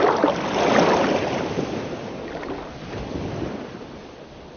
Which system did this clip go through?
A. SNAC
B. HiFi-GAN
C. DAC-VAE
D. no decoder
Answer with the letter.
D